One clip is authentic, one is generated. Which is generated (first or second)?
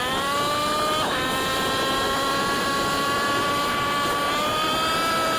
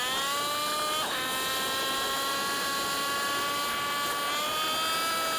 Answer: first